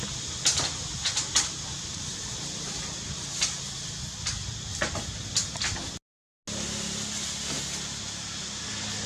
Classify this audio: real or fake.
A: real